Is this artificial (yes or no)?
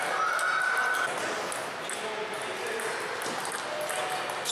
no